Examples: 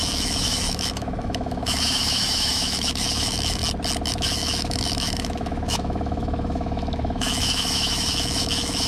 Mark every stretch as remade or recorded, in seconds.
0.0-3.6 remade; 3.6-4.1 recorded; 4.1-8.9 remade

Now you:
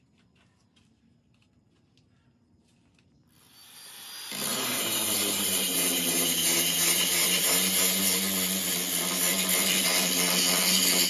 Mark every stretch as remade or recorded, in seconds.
0.0-4.5 recorded; 4.5-8.0 remade; 8.0-11.1 recorded

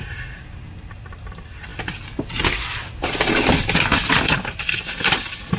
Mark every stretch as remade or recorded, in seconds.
0.0-5.6 recorded

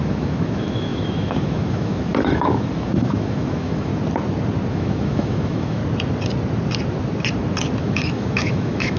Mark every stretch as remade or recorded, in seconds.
0.0-3.9 remade; 3.9-4.7 recorded; 4.7-5.8 remade; 5.8-7.8 recorded; 7.8-9.0 remade